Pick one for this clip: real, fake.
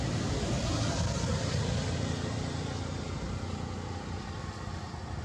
real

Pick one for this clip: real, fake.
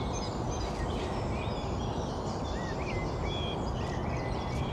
real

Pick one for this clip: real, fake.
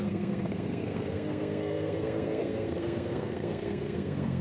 fake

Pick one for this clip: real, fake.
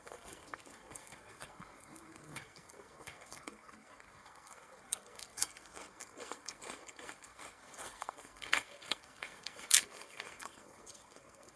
fake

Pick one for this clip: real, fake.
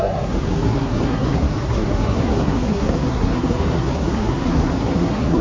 fake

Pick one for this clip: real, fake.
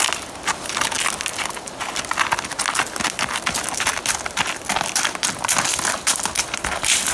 real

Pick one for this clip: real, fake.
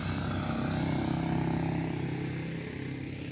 real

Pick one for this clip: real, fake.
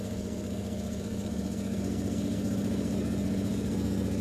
fake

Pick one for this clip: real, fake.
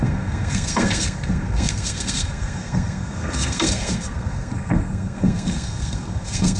fake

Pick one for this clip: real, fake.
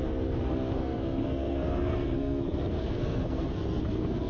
fake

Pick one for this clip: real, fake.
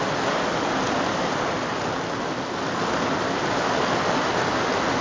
real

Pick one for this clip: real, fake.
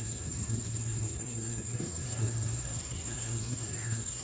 fake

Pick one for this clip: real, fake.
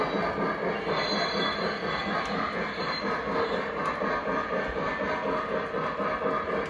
real